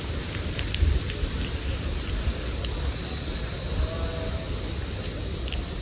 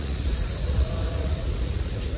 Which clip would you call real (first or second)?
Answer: first